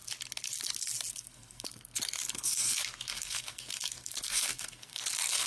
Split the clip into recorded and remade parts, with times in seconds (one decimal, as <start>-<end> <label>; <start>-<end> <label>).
0.0-1.1 recorded; 1.1-5.5 remade